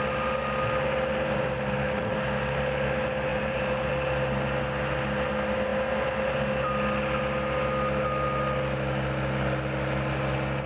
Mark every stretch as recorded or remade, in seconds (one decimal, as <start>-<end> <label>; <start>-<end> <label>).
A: 0.0-3.3 recorded; 3.3-3.9 remade; 3.9-10.7 recorded